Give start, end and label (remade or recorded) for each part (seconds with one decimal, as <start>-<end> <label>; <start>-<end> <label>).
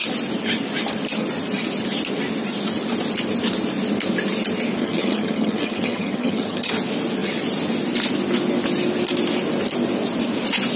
0.0-4.8 recorded; 4.8-6.7 remade; 6.7-10.8 recorded